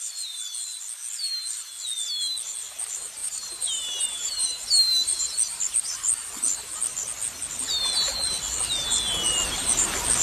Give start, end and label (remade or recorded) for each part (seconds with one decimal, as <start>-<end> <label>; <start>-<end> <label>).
0.0-3.2 recorded; 3.2-5.3 remade; 5.3-10.2 recorded